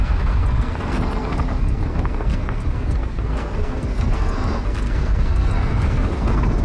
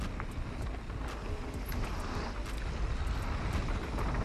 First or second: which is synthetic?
first